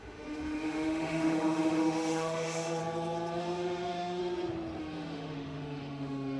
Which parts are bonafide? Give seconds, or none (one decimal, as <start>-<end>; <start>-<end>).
2.8-3.4; 4.2-4.8